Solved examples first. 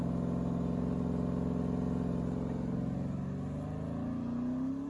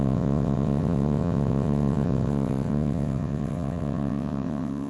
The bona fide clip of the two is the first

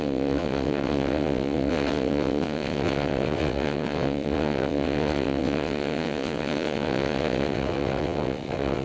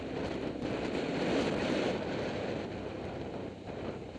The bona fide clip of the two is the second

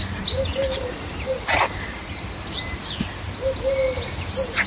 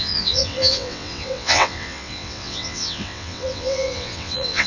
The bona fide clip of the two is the first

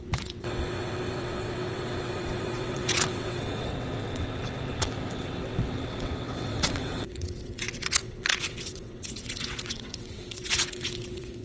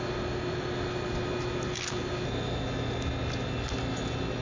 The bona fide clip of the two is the second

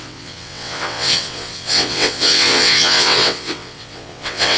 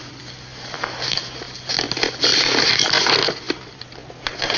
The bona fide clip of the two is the second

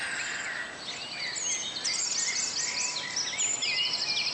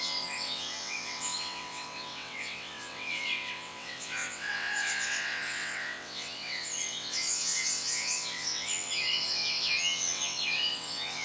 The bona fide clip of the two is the first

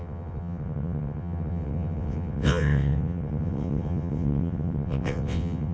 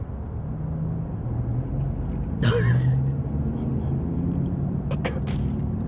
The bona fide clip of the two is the second